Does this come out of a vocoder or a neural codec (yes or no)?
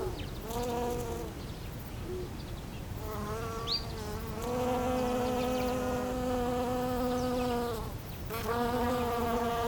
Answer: no